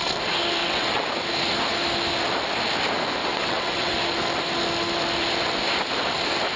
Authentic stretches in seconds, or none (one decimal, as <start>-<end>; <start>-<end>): 0.0-0.6; 1.1-3.2; 4.0-6.6